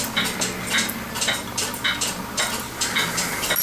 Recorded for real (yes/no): yes